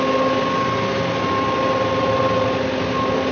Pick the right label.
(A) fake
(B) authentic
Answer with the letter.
B